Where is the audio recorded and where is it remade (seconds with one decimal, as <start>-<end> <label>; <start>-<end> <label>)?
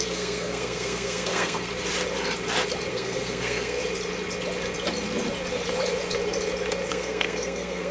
0.0-1.7 remade; 1.7-2.9 recorded; 2.9-3.8 remade; 3.8-6.9 recorded; 6.9-7.9 remade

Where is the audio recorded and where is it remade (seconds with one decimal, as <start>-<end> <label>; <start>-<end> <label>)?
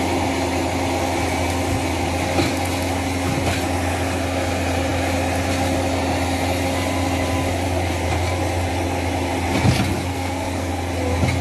0.0-10.1 recorded; 10.1-10.7 remade; 10.7-11.4 recorded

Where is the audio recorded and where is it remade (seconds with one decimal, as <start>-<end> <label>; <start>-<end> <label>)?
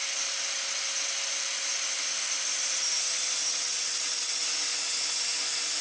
0.0-3.5 recorded; 3.5-4.4 remade; 4.4-5.8 recorded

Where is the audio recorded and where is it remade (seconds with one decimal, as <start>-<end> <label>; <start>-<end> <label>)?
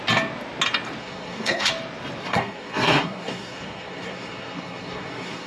0.0-1.0 recorded; 1.0-1.7 remade; 1.7-2.2 recorded; 2.2-5.5 remade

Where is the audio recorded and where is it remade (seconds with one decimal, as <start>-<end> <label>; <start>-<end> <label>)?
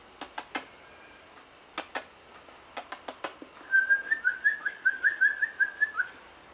0.0-4.6 recorded; 4.6-5.2 remade; 5.2-6.5 recorded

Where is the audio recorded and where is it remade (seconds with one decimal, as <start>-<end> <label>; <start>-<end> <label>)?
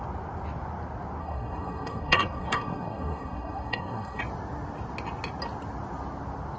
0.0-1.2 recorded; 1.2-4.2 remade; 4.2-6.6 recorded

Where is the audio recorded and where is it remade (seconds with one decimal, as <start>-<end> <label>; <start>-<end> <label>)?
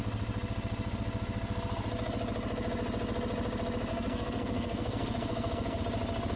0.0-3.9 recorded; 3.9-5.8 remade; 5.8-6.4 recorded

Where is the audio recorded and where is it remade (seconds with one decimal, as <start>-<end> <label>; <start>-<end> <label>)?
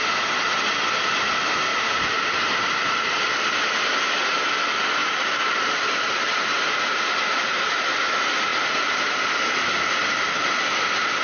0.0-1.7 recorded; 1.7-3.2 remade; 3.2-5.0 recorded; 5.0-8.1 remade; 8.1-11.2 recorded